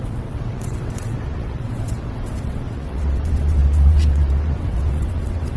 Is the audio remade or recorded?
remade